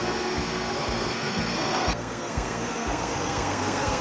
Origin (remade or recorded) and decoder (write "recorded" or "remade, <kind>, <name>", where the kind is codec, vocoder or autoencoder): remade, codec, SNAC